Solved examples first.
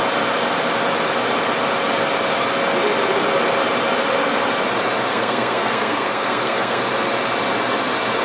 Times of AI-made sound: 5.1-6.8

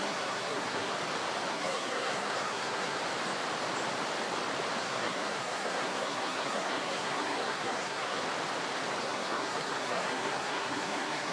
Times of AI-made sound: 0.0-0.9; 1.5-3.0; 4.8-8.2; 9.0-11.3

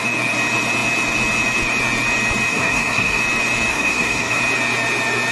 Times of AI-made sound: 2.5-3.2; 3.7-4.4